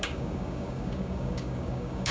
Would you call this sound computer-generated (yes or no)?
yes